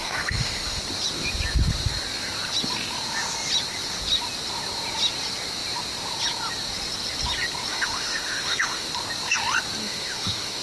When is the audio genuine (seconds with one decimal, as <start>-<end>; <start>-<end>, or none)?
0.8-7.7; 8.9-9.8